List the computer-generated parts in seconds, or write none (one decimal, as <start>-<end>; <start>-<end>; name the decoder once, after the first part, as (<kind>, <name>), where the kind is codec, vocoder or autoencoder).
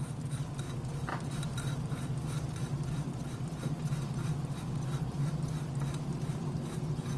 1.1-5.4 (vocoder, BigVGAN v2); 6.1-6.8